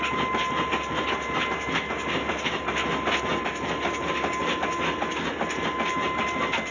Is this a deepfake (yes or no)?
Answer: no